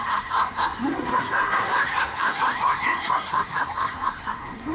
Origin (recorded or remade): remade